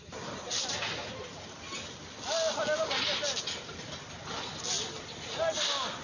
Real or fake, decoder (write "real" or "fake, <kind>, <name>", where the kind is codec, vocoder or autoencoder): real